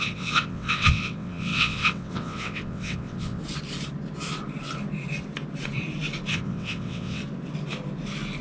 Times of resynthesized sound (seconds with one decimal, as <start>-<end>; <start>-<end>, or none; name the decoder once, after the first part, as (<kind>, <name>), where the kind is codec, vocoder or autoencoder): 0.0-3.4 (vocoder, WaveNeXt); 6.3-7.2

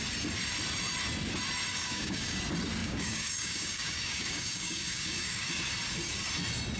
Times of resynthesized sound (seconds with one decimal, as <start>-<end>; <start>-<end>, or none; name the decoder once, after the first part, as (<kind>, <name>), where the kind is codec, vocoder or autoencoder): 1.7-2.4 (codec, DAC); 2.8-5.5

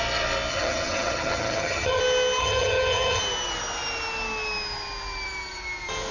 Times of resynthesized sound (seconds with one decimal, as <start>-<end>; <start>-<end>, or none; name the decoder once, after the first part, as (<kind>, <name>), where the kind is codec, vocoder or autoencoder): 0.5-2.0 (vocoder, HiFi-GAN); 2.4-3.2

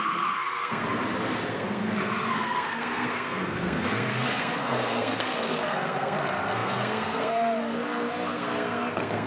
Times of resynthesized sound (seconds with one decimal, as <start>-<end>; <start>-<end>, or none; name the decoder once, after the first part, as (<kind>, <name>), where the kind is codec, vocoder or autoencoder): 0.0-0.8 (codec, SNAC); 1.5-9.3

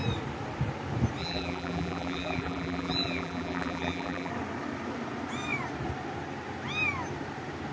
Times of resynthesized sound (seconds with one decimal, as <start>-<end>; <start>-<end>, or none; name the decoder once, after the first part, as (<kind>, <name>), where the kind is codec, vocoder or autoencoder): 1.2-4.3 (vocoder, BigVGAN v2)